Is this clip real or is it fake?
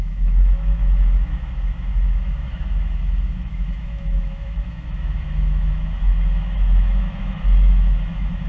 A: fake